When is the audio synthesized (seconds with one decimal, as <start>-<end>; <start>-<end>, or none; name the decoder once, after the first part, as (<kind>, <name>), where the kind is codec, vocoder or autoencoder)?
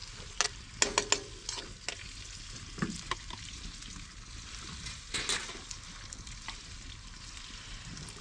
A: none